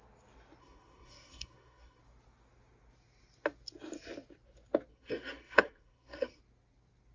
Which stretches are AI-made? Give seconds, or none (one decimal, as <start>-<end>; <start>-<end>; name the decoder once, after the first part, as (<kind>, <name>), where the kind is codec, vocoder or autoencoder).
0.6-2.0 (codec, SNAC); 4.9-6.4